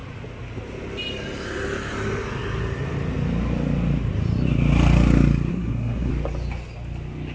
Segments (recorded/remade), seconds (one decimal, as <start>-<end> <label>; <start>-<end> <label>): 0.0-5.5 recorded; 5.5-6.1 remade; 6.1-7.3 recorded